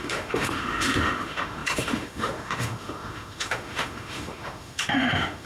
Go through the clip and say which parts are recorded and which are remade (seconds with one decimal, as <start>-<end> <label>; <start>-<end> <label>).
0.0-5.5 remade